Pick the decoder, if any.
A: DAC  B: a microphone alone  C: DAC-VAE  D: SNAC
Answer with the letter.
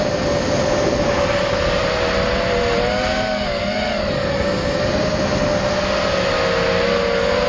B